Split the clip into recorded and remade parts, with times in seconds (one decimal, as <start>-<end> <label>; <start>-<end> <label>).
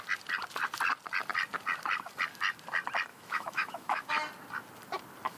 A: 0.0-3.1 recorded; 3.1-4.1 remade; 4.1-5.4 recorded